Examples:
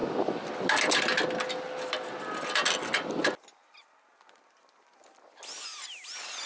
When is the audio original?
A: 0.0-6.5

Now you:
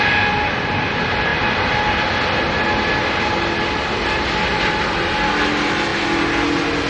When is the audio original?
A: 0.0-6.9